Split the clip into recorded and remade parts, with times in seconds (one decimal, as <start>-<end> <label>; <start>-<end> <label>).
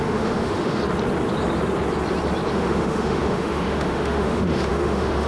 0.0-0.8 remade; 0.8-2.5 recorded; 2.5-5.3 remade